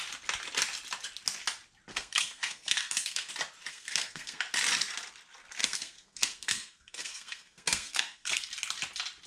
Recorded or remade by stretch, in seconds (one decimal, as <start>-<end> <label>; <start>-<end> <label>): 0.0-1.9 recorded; 1.9-3.3 remade; 3.3-3.7 recorded; 3.7-4.4 remade; 4.4-5.6 recorded; 5.6-8.5 remade; 8.5-9.3 recorded